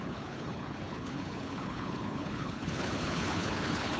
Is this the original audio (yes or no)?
no